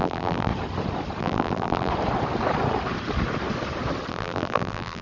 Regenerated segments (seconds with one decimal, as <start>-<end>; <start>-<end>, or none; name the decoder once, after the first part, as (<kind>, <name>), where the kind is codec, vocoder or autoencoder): 0.0-0.5 (vocoder, BigVGAN v2); 1.2-1.9; 4.1-5.0